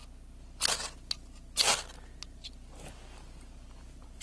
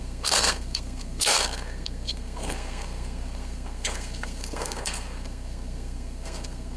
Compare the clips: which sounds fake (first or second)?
second